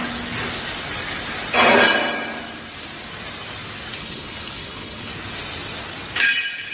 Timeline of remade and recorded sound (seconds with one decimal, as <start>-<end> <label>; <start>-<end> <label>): 0.0-4.0 recorded; 4.0-5.1 remade; 5.1-6.7 recorded